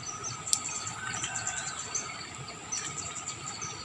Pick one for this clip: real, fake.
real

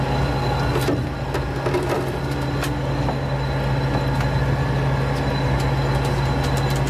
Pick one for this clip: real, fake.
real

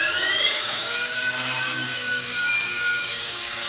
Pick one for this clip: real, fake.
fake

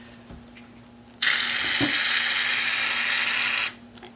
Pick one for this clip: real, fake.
real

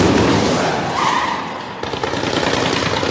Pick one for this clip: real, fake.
fake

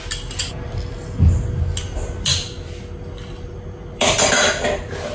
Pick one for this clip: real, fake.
real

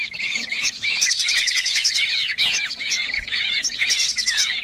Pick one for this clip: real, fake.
fake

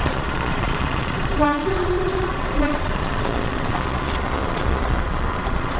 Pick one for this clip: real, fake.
fake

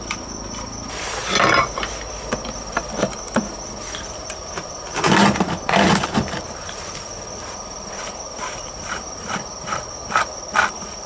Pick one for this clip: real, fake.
fake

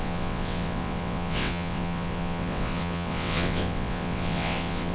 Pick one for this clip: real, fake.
fake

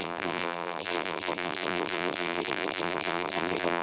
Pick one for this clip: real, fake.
fake